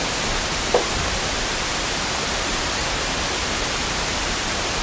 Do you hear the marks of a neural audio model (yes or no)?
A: yes